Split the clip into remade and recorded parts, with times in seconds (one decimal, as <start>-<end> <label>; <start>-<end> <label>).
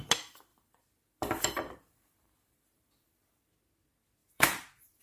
0.0-0.5 recorded; 0.5-3.5 remade; 3.5-4.2 recorded; 4.2-5.0 remade